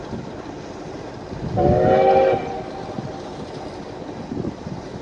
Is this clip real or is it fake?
real